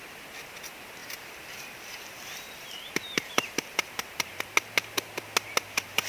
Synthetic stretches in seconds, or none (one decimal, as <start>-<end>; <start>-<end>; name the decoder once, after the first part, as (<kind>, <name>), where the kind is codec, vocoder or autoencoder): 1.0-4.4 (vocoder, BigVGAN v2)